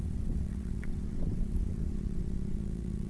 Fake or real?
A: fake